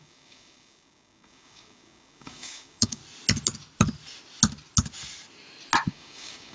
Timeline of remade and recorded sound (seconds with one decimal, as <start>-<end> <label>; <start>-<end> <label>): 0.0-3.0 remade; 3.0-5.9 recorded; 5.9-6.5 remade